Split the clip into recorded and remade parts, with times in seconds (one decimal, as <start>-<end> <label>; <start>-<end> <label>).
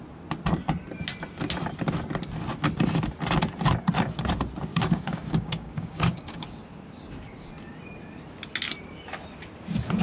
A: 0.0-4.7 recorded; 4.7-6.6 remade; 6.6-10.0 recorded